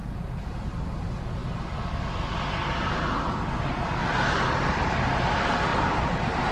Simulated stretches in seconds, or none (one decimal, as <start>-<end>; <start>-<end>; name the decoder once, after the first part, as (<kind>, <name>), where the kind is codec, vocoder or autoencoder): 1.4-2.2 (vocoder, BigVGAN v2); 2.6-3.5; 4.0-4.9; 5.7-6.5